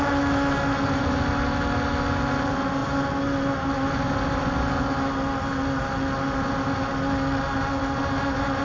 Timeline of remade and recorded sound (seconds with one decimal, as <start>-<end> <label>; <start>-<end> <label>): 0.0-8.6 recorded